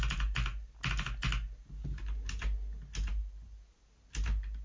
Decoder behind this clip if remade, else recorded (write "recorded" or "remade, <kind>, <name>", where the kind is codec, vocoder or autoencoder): recorded